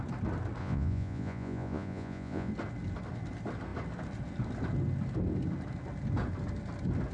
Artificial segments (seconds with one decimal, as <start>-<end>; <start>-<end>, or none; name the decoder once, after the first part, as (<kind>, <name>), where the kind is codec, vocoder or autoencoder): 0.6-2.5 (vocoder, Vocos)